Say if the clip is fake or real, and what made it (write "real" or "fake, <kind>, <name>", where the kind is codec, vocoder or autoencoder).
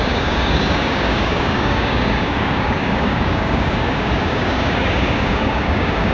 fake, codec, DAC